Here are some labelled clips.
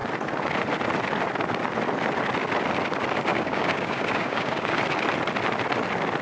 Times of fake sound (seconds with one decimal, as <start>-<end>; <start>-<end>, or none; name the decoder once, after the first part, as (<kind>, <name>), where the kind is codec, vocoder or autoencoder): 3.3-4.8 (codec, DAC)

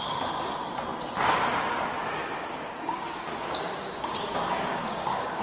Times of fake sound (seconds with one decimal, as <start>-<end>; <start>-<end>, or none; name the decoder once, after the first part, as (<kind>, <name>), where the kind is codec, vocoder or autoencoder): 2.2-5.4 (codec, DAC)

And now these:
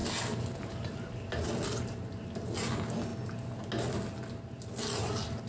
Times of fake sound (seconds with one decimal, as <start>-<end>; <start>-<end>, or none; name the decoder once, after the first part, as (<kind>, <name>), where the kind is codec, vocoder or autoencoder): none